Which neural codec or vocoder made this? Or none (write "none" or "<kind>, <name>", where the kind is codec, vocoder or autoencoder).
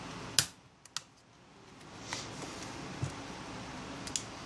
none